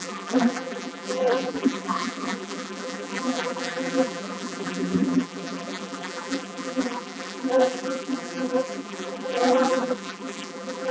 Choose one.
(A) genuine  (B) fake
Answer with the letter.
B